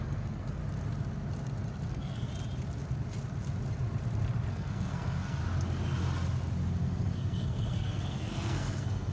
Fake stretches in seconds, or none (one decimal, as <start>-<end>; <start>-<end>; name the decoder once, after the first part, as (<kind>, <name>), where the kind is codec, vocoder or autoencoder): 0.0-0.6 (codec, SNAC); 1.9-2.3; 4.5-5.4; 6.7-9.1